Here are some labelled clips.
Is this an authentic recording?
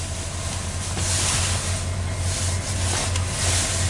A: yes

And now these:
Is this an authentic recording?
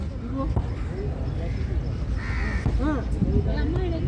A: yes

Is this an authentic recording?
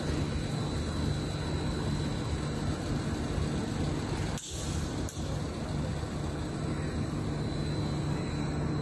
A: yes